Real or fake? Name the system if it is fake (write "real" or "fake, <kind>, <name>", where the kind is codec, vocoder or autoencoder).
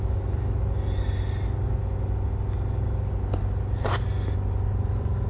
real